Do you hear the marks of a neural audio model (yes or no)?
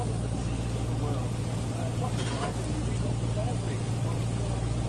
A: no